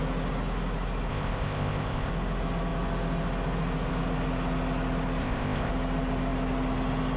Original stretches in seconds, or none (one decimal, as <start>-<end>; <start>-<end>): 0.0-1.1; 2.1-5.2; 5.7-7.2